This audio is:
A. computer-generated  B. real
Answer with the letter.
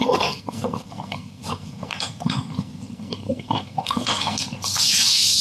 A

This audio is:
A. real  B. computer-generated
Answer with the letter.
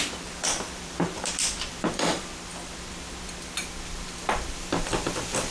B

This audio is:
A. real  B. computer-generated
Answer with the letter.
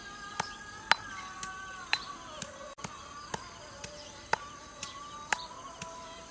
A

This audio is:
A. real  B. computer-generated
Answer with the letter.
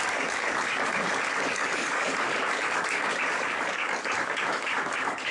B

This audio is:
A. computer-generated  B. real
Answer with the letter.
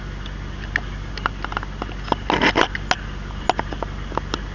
B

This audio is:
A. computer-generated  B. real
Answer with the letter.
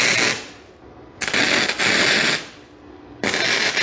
B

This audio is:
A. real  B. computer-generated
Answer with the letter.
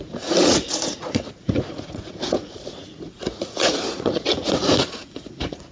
B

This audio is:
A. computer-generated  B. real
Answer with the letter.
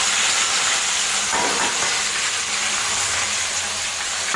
A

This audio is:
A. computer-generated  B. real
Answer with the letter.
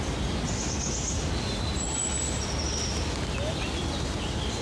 B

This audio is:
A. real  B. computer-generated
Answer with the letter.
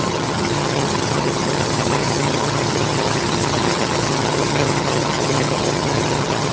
B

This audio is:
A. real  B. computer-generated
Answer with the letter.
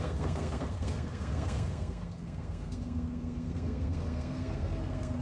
B